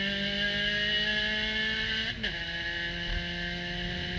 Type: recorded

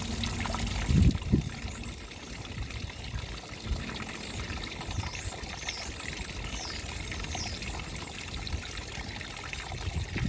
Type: recorded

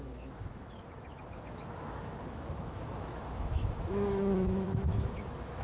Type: remade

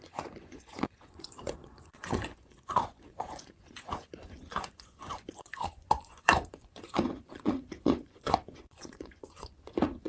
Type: remade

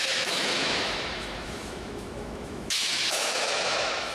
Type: remade